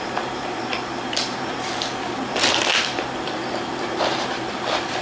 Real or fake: fake